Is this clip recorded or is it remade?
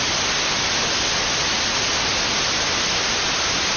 recorded